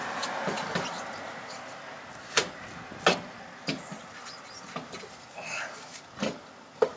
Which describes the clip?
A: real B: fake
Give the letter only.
A